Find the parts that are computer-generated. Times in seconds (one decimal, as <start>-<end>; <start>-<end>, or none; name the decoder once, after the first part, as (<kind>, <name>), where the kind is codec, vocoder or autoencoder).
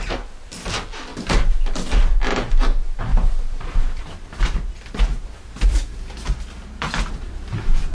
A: 1.1-2.1 (vocoder, BigVGAN v2); 3.1-4.0